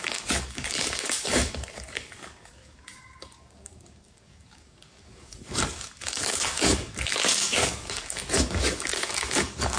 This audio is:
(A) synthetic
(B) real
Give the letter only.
A